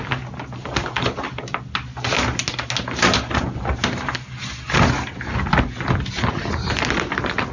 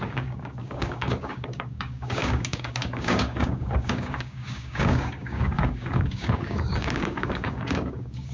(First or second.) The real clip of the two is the first